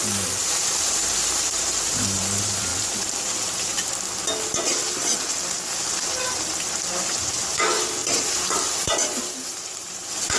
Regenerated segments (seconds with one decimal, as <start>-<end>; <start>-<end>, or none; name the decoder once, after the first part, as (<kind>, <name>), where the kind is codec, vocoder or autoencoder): 0.0-2.7 (vocoder, BigVGAN v2); 3.2-3.7; 7.0-10.4